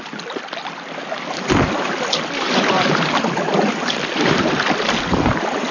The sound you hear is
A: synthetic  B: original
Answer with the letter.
B